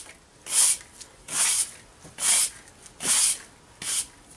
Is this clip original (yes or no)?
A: yes